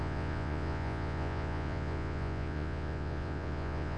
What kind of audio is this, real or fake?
fake